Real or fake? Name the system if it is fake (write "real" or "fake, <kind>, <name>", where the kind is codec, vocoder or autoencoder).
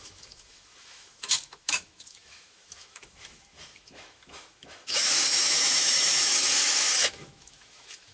fake, autoencoder, DAC-VAE